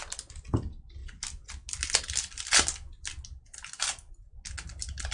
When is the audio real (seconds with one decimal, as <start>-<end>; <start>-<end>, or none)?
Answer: 0.0-5.1

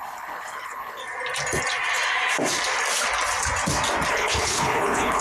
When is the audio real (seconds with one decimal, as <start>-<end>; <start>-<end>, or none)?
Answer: 1.0-4.1

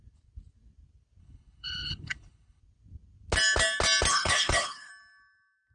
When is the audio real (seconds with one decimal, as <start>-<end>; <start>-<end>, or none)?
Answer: 0.0-1.2; 2.6-4.1; 4.9-5.7

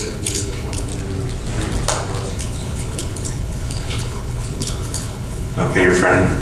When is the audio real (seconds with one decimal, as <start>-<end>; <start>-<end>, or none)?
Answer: 0.9-2.3

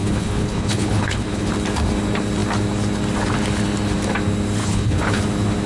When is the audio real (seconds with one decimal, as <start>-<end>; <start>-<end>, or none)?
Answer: 1.5-4.6; 5.2-5.7

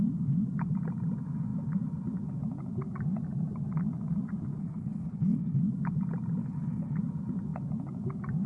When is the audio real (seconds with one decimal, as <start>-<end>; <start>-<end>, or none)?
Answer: 0.0-4.6; 5.6-6.4; 7.0-8.5